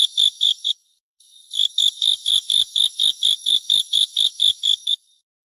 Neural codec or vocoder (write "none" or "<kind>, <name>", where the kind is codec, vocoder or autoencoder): codec, SNAC